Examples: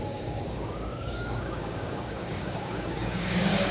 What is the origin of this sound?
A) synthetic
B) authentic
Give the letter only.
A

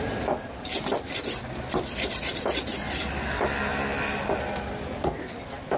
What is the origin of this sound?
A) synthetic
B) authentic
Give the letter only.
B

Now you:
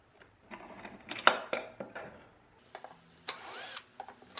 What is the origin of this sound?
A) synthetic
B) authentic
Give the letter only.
B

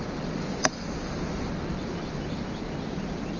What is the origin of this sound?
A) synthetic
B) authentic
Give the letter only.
B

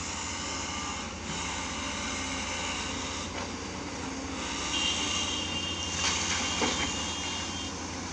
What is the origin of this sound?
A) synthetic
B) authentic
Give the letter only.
B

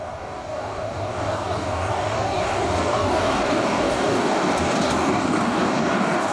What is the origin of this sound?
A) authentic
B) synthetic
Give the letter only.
B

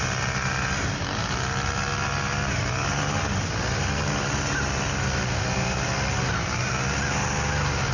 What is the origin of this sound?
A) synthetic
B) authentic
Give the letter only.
B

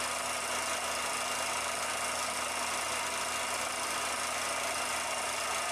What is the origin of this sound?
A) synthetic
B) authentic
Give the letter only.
B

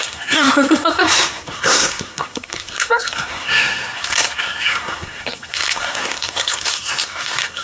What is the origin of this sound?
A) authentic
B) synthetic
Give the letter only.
B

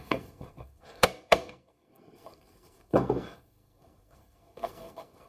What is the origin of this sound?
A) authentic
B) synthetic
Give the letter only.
B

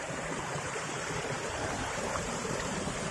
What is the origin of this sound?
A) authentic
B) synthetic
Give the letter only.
B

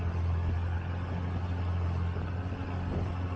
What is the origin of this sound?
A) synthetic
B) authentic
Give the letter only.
B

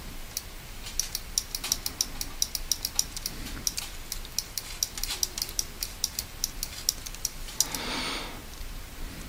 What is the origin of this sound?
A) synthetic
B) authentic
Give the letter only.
B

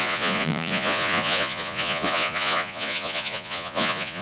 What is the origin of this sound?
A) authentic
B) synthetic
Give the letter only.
B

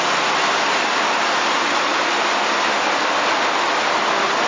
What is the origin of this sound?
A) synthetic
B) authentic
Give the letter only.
B